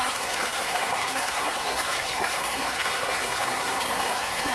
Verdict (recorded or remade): remade